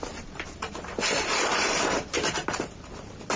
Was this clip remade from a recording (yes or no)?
yes